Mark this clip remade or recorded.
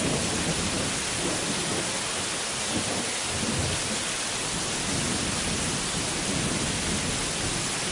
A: recorded